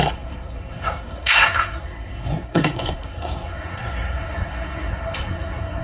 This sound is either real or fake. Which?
fake